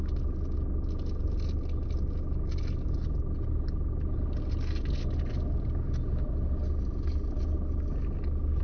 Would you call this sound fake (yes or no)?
no